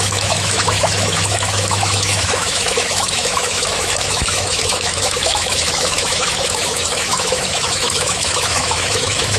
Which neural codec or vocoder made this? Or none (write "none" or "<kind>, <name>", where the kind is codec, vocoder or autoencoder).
autoencoder, DAC-VAE